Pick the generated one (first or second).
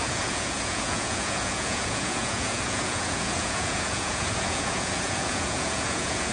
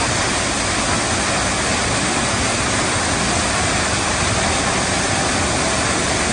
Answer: first